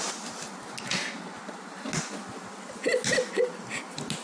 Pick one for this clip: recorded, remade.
recorded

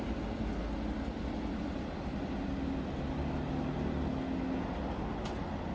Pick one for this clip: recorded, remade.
recorded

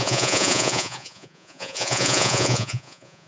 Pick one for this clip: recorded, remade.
remade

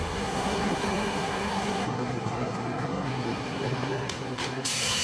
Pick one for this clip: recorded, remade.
remade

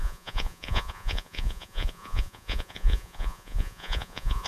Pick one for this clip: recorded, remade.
remade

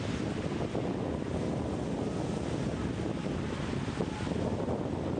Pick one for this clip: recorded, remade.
recorded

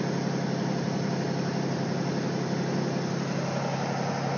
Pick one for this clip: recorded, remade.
recorded